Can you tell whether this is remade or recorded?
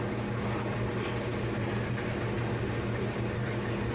recorded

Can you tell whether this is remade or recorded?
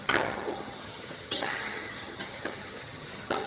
remade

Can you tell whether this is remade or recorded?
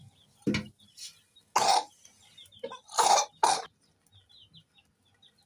recorded